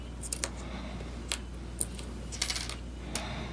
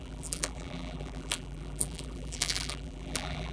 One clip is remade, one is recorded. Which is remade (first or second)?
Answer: second